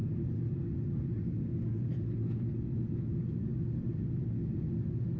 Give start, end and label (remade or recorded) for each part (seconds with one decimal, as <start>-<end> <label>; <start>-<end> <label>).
0.0-5.2 recorded